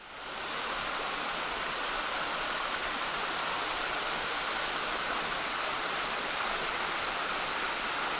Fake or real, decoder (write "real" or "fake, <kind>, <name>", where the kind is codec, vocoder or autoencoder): real